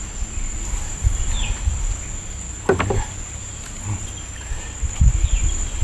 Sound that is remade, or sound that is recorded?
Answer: recorded